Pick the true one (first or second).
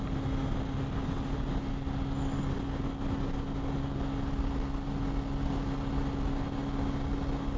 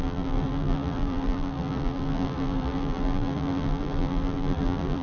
first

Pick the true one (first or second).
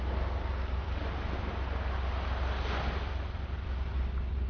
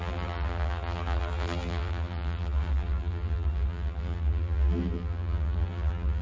first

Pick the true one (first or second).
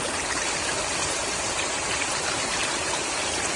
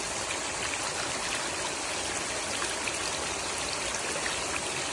second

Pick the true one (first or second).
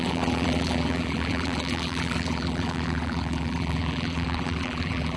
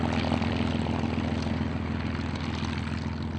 second